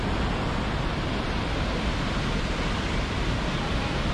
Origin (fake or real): real